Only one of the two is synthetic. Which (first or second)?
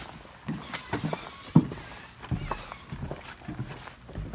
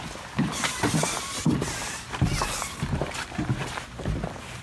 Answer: second